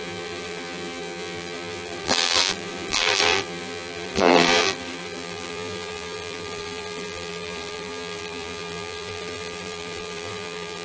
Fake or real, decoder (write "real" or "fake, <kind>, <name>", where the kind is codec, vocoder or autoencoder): fake, vocoder, BigVGAN v2